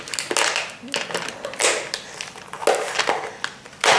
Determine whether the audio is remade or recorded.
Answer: recorded